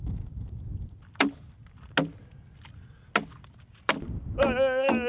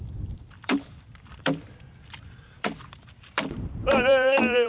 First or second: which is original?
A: first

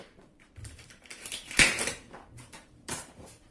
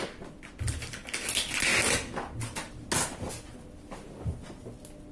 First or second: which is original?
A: second